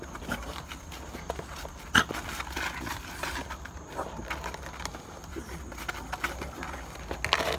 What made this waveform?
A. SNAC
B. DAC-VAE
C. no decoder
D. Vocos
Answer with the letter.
C